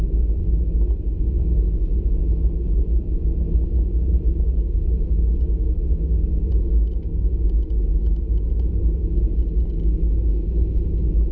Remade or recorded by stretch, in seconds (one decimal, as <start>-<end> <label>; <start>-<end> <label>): 0.0-3.7 recorded; 3.7-4.3 remade; 4.3-11.3 recorded